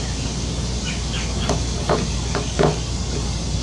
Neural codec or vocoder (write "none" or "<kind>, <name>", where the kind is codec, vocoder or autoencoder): codec, DAC